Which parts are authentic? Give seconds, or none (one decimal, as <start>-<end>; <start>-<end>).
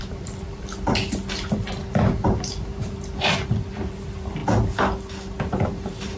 4.4-5.5